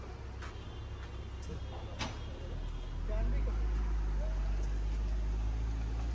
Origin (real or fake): real